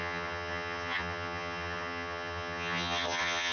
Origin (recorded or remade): remade